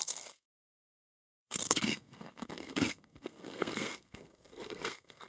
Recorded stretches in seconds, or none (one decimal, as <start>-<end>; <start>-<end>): none